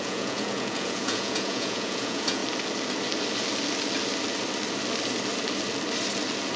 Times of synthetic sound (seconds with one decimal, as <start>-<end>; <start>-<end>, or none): 0.0-2.4